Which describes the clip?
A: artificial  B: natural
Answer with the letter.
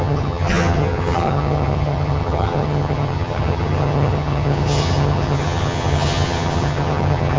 A